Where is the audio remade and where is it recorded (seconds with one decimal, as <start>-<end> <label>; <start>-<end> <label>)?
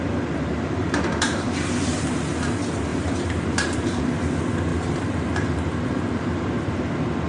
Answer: 0.0-0.5 recorded; 0.5-2.2 remade; 2.2-2.9 recorded; 2.9-4.1 remade; 4.1-4.7 recorded; 4.7-6.8 remade; 6.8-7.3 recorded